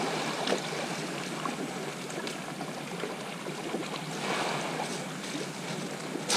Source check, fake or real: real